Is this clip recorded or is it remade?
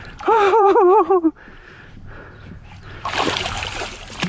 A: remade